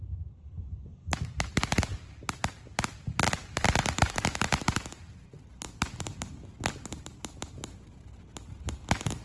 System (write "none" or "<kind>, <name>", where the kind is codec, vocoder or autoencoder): none